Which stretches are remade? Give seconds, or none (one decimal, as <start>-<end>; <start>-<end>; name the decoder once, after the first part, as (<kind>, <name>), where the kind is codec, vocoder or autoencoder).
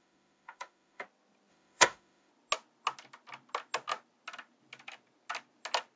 0.0-1.0 (autoencoder, DAC-VAE); 1.5-2.3